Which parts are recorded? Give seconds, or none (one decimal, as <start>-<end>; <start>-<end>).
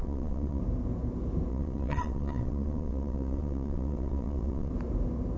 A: 0.6-1.5; 4.7-5.4